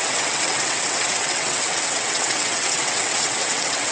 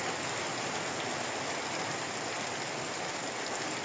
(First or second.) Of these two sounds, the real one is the second